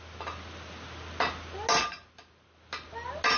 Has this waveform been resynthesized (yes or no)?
no